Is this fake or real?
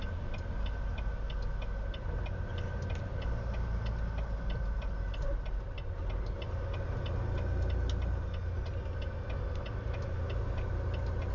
real